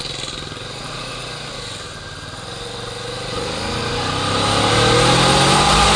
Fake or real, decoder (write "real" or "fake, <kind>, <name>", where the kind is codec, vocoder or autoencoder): real